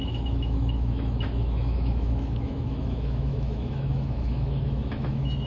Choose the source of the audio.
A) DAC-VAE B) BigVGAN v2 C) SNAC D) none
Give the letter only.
A